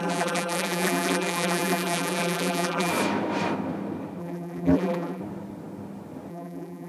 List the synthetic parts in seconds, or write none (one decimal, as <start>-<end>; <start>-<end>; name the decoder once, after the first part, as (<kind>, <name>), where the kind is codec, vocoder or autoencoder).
0.0-2.9 (vocoder, BigVGAN v2); 4.2-5.2; 6.3-6.9